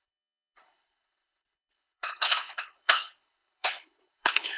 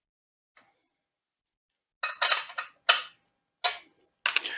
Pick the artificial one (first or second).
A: first